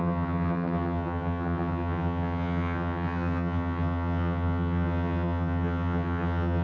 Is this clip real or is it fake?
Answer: fake